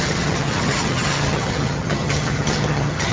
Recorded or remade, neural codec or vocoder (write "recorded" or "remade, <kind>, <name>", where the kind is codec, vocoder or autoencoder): remade, vocoder, HiFi-GAN